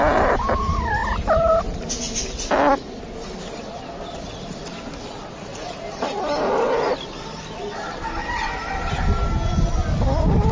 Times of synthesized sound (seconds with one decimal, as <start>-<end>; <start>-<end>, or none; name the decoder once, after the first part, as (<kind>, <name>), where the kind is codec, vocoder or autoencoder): none